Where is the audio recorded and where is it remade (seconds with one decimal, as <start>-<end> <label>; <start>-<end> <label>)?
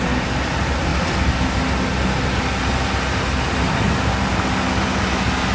0.0-5.5 recorded